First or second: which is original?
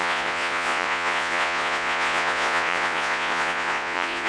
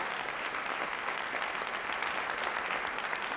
second